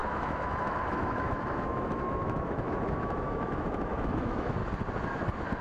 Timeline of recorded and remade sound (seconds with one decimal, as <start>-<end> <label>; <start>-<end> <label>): 0.0-4.6 remade; 4.6-5.6 recorded